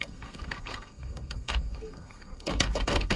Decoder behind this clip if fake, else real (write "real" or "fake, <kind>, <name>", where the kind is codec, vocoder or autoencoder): fake, codec, SNAC